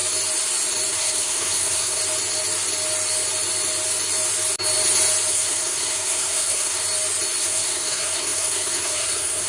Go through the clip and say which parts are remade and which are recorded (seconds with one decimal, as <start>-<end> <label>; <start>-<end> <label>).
0.0-0.9 recorded; 0.9-2.0 remade; 2.0-5.3 recorded; 5.3-6.8 remade; 6.8-7.4 recorded; 7.4-9.5 remade